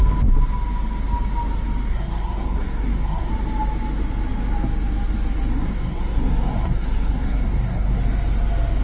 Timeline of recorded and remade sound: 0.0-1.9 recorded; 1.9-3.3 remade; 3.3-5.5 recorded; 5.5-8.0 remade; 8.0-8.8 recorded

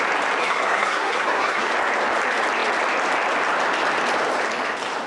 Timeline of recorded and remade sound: 0.0-0.4 recorded; 0.4-1.7 remade; 1.7-5.1 recorded

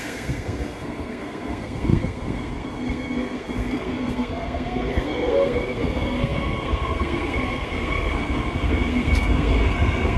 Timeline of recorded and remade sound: 0.0-10.2 remade

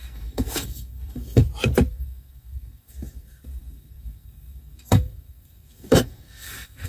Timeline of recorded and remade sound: 0.0-1.4 remade; 1.4-1.9 recorded; 1.9-6.9 remade

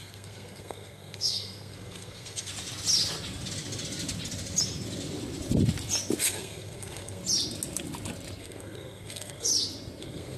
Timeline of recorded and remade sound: 0.0-2.5 remade; 2.5-6.2 recorded; 6.2-7.2 remade; 7.2-8.4 recorded; 8.4-9.5 remade; 9.5-10.0 recorded; 10.0-10.4 remade

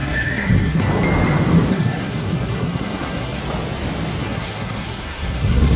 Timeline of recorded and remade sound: 0.0-0.9 remade; 0.9-1.7 recorded; 1.7-3.4 remade; 3.4-4.2 recorded; 4.2-5.8 remade

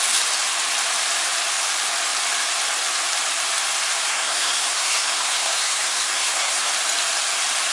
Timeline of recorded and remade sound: 0.0-4.1 recorded; 4.1-6.7 remade; 6.7-7.7 recorded